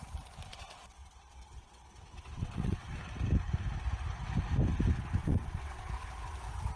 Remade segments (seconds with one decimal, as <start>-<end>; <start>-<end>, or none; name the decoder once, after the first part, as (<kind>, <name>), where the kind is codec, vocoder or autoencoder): 0.5-3.0 (vocoder, WaveNeXt); 5.2-5.8